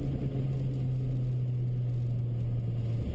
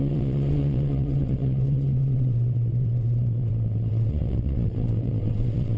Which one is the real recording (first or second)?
first